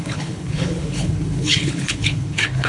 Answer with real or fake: fake